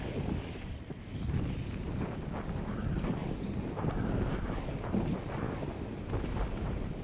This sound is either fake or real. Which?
real